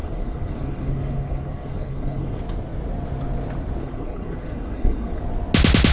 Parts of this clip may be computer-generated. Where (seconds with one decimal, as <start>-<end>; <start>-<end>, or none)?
0.0-2.4; 3.8-5.2